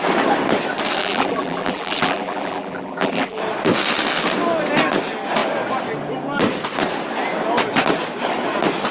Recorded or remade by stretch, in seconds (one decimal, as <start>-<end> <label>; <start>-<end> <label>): 0.0-1.0 recorded; 1.0-3.4 remade; 3.4-8.9 recorded